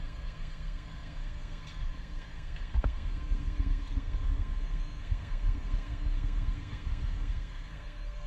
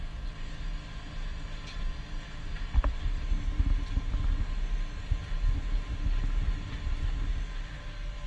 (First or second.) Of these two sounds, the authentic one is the second